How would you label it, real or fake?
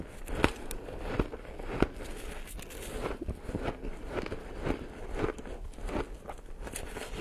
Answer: real